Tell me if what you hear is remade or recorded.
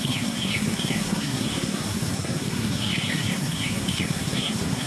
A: remade